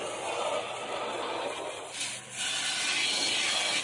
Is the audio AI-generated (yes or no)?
no